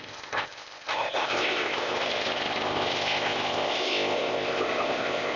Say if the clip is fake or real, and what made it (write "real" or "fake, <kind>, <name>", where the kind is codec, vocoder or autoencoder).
fake, codec, ZipCodec